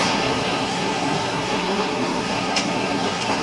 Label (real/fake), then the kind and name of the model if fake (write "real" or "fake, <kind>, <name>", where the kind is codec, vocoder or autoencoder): fake, codec, SNAC